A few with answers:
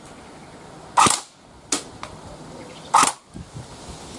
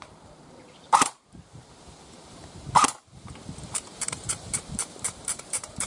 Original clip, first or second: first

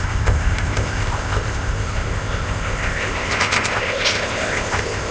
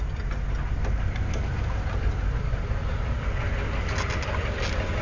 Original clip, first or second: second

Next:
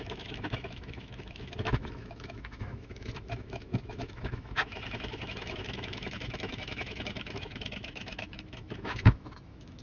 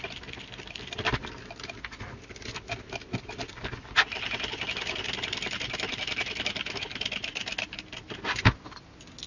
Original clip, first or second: second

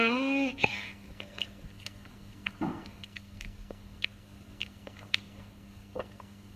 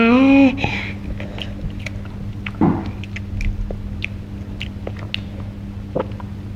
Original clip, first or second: second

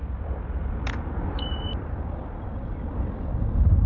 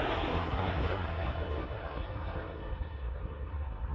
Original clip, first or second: first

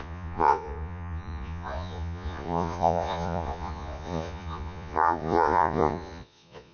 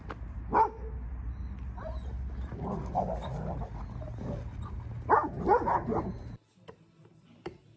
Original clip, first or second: second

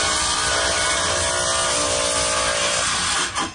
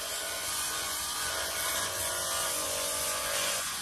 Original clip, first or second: first